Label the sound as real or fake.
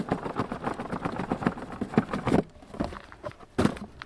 real